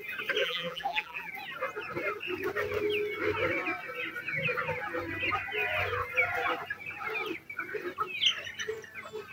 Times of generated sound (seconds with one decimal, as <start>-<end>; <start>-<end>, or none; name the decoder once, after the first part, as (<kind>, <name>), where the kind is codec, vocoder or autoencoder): 0.4-1.3 (vocoder, BigVGAN v2)